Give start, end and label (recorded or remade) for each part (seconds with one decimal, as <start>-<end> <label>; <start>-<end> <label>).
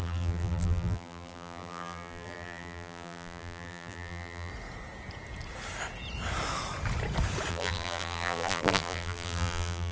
0.0-4.5 remade; 4.5-7.5 recorded; 7.5-9.9 remade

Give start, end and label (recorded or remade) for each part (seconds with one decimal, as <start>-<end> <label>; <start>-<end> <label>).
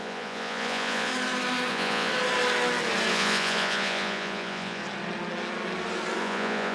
0.0-1.1 remade; 1.1-1.7 recorded; 1.7-2.1 remade; 2.1-3.1 recorded; 3.1-4.8 remade; 4.8-6.2 recorded; 6.2-6.7 remade